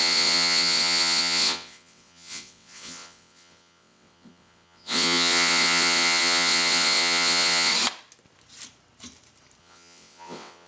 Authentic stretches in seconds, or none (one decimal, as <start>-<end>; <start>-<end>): 7.7-9.6